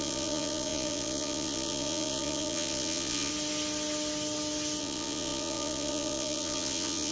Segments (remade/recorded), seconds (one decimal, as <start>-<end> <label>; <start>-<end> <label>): 0.0-3.3 remade; 3.3-4.8 recorded; 4.8-7.1 remade